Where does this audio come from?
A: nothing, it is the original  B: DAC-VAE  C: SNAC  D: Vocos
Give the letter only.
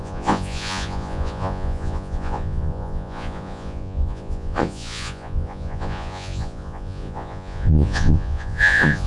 D